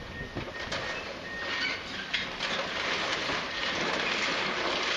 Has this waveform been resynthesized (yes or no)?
no